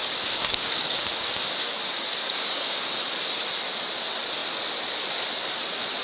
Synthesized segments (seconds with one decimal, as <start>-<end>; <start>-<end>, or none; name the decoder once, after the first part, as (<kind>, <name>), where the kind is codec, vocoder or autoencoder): 0.0-2.9 (codec, DAC)